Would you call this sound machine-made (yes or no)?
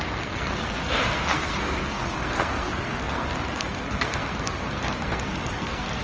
yes